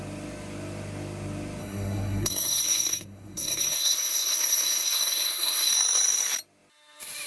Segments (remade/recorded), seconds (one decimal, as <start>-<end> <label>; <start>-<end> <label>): 0.0-1.6 recorded; 1.6-5.7 remade; 5.7-7.3 recorded